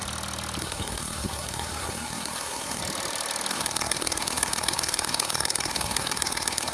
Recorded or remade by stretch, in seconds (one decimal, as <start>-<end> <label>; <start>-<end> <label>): 0.0-0.6 recorded; 0.6-2.8 remade; 2.8-3.5 recorded; 3.5-6.7 remade